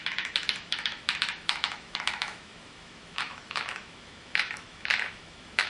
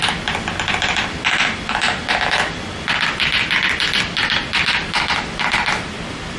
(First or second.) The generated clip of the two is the first